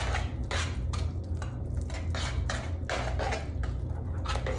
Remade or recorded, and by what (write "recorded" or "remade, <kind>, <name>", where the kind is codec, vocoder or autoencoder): recorded